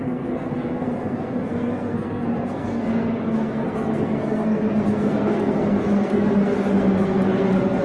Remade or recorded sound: remade